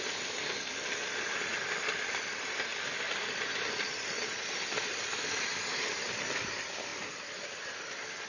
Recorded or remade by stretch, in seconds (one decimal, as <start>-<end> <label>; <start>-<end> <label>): 0.0-8.3 recorded